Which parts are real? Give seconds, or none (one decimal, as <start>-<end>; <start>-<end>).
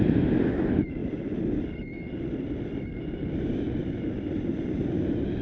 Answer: 0.0-5.4